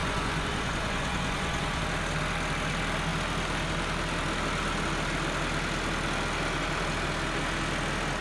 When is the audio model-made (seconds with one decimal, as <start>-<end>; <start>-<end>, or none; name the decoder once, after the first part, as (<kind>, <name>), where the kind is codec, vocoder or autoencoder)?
0.0-1.8 (vocoder, Vocos)